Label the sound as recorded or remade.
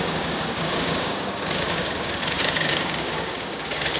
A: remade